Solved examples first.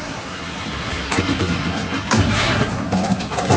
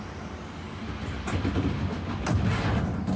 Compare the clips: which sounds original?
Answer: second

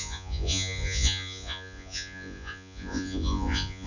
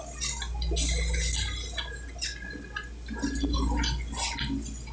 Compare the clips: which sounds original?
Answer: second